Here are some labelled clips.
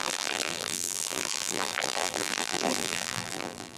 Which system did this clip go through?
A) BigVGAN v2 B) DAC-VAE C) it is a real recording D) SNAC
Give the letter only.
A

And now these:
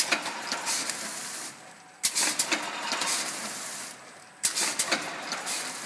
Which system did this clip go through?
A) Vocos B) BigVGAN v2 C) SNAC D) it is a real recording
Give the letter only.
D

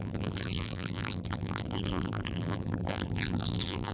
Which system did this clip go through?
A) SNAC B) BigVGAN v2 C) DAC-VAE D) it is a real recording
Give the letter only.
B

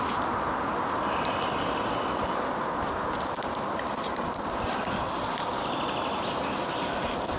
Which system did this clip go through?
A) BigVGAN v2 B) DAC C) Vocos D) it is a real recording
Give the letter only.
D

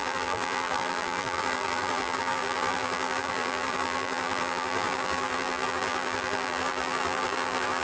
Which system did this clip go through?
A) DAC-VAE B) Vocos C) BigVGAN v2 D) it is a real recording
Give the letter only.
C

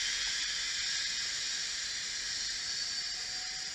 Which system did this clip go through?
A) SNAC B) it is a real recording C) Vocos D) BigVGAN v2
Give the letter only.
B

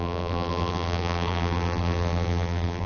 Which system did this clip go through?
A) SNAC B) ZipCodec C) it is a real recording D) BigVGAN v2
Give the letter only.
D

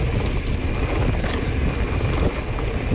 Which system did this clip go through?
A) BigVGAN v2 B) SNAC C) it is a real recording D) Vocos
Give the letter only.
C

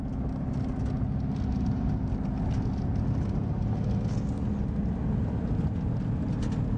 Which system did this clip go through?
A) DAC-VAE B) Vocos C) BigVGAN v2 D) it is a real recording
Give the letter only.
D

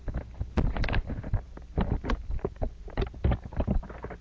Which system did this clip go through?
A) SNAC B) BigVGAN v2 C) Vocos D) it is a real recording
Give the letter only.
D